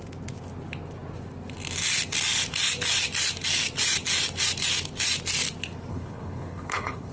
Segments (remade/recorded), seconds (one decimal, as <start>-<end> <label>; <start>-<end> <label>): 0.0-5.9 recorded; 5.9-7.1 remade